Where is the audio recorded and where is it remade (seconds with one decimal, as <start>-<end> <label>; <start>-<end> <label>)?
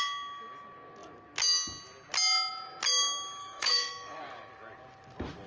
0.0-3.4 recorded; 3.4-4.2 remade; 4.2-5.5 recorded